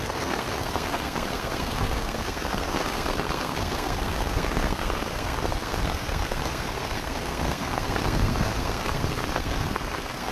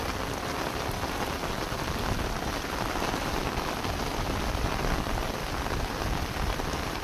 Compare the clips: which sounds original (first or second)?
second